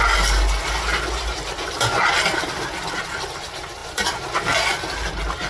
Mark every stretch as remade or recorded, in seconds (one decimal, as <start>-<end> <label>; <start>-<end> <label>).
0.0-5.5 recorded